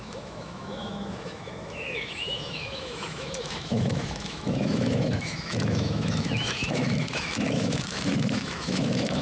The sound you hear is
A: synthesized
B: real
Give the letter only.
A